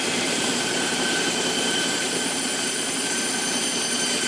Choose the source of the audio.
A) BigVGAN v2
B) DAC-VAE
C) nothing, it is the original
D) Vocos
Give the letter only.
A